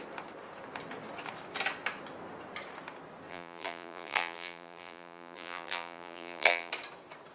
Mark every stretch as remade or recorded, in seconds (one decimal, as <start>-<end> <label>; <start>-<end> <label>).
0.0-3.3 recorded; 3.3-6.7 remade; 6.7-7.3 recorded